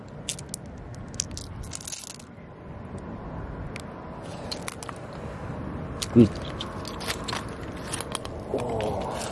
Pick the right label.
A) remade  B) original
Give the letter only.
B